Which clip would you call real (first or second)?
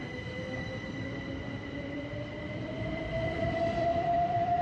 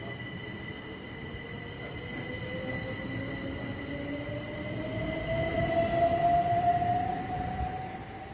second